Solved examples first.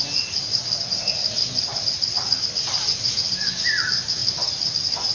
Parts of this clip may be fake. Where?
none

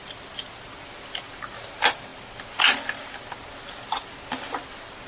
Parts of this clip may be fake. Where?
none

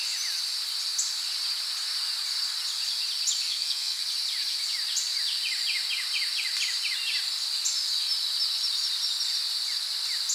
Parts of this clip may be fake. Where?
3.5-4.0

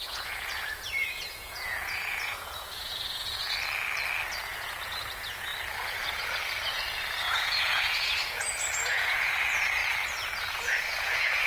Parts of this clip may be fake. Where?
0.0-3.4; 4.5-5.5; 7.2-9.8; 10.5-11.5

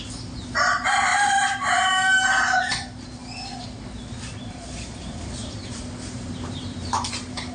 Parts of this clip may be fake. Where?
1.1-1.9; 5.4-7.5

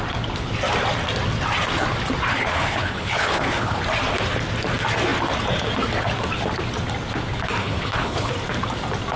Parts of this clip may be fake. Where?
2.3-3.8; 7.6-8.3